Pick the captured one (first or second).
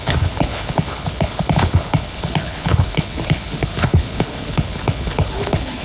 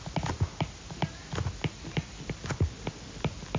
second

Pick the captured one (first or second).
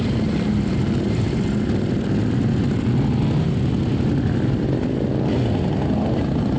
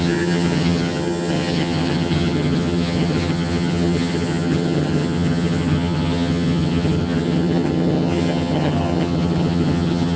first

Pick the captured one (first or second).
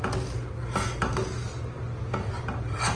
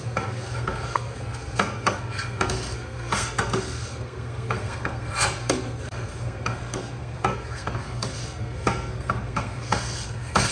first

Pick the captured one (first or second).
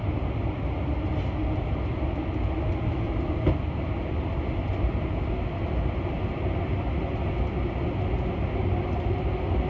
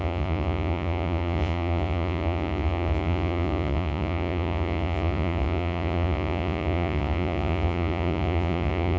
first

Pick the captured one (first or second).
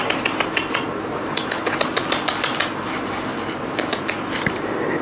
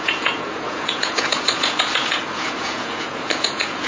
first